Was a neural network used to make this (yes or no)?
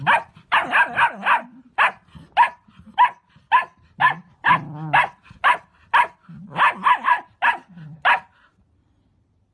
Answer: no